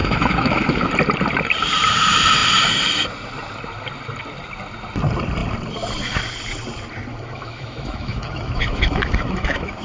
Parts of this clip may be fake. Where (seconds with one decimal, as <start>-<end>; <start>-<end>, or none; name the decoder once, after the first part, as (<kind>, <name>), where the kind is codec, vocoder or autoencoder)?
0.0-0.9 (autoencoder, DAC-VAE); 7.1-9.8